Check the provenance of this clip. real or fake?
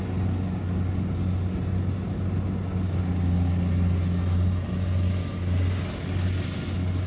real